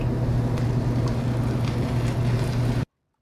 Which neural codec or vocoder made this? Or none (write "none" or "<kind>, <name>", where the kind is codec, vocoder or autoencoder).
none